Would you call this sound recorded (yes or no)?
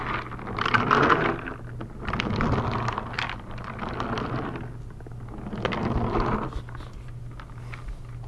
yes